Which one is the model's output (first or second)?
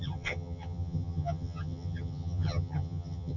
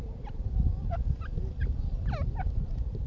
first